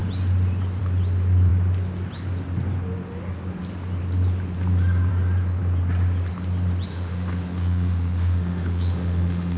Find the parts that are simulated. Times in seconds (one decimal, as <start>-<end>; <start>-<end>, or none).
6.9-9.6